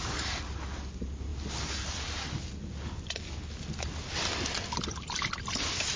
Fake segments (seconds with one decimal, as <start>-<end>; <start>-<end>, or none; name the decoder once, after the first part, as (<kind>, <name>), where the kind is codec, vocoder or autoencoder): none